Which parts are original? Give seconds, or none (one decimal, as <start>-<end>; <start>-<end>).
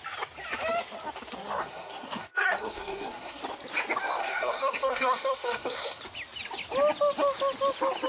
0.0-1.6; 3.4-4.2; 6.0-8.1